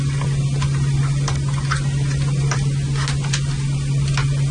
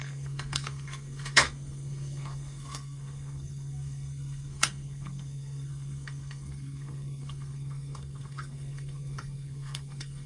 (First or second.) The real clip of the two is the first